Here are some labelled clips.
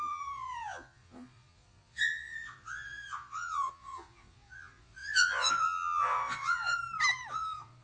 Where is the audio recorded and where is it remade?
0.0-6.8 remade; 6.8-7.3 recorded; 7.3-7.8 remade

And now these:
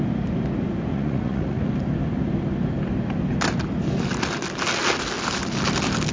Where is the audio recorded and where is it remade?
0.0-0.9 recorded; 0.9-1.7 remade; 1.7-6.1 recorded

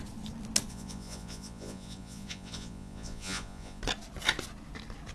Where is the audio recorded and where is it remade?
0.0-0.7 recorded; 0.7-3.8 remade; 3.8-5.1 recorded

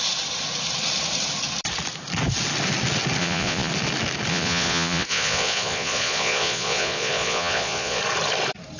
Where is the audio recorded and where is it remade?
0.0-3.2 recorded; 3.2-3.7 remade; 3.7-4.3 recorded; 4.3-8.0 remade; 8.0-8.8 recorded

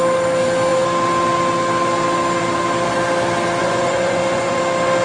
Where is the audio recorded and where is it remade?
0.0-3.6 recorded; 3.6-4.6 remade; 4.6-5.0 recorded

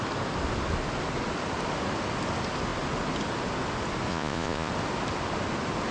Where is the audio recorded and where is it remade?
0.0-4.1 recorded; 4.1-4.7 remade; 4.7-5.9 recorded

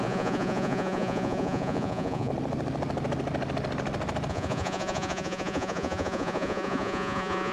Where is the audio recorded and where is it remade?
0.0-2.3 remade; 2.3-4.3 recorded; 4.3-7.5 remade